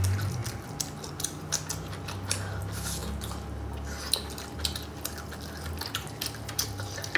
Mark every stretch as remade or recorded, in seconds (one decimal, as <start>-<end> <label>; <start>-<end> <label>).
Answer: 0.0-7.2 recorded